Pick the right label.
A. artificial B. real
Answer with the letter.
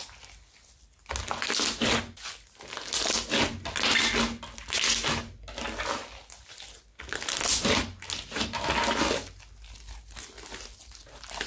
B